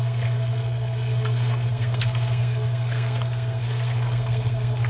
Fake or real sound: fake